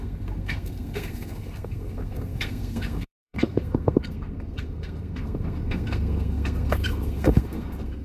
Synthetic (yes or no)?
yes